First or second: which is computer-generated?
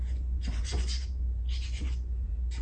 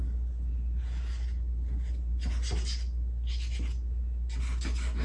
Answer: first